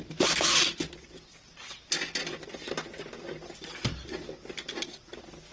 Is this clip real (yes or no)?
yes